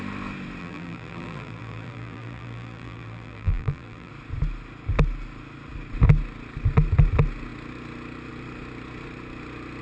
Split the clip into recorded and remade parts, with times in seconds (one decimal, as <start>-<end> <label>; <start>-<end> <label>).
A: 0.0-0.6 recorded; 0.6-4.1 remade; 4.1-9.8 recorded